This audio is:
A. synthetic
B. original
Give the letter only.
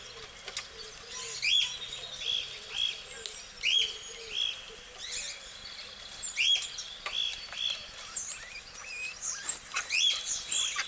B